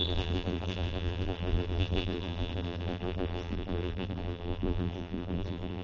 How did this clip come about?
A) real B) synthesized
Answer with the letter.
B